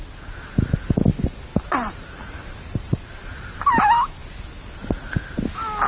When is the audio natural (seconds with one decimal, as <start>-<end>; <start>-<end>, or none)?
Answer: 0.0-1.5; 3.5-5.9